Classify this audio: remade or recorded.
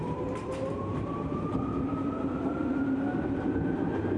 remade